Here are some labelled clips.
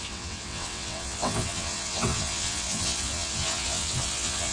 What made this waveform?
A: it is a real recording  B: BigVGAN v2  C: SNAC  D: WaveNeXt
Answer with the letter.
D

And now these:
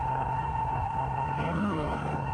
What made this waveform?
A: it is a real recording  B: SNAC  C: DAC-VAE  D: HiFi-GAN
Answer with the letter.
B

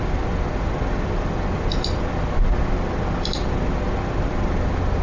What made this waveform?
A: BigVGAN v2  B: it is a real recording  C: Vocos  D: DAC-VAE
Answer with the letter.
B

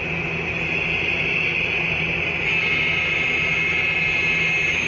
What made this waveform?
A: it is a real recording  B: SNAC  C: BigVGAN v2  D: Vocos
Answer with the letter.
A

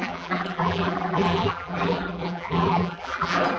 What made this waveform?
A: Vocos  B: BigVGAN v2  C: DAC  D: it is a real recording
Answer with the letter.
B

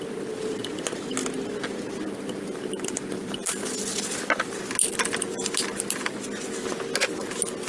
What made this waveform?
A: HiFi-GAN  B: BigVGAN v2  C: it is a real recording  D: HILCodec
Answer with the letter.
C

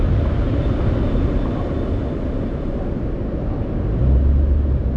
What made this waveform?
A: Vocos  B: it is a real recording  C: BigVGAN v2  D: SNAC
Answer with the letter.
B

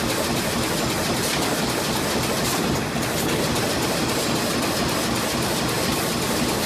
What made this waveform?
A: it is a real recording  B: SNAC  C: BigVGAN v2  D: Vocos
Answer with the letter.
A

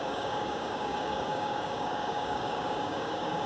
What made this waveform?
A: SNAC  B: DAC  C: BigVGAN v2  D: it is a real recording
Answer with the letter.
B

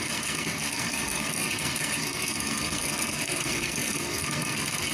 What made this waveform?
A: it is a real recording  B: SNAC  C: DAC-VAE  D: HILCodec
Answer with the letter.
B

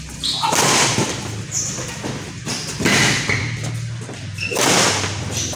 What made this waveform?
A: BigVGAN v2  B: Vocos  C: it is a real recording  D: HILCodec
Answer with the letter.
C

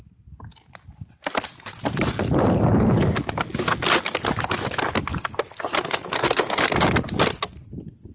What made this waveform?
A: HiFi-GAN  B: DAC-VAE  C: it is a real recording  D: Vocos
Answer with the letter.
C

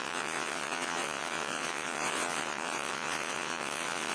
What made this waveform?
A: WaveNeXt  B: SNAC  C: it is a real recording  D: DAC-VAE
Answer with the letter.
A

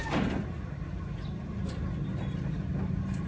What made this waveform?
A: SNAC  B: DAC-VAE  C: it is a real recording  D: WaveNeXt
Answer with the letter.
C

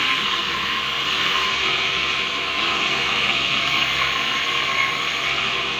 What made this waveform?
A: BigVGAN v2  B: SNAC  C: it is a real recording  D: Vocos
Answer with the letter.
B